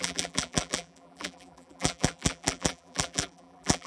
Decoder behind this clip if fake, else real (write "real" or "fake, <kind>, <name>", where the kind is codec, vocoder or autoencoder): fake, vocoder, BigVGAN v2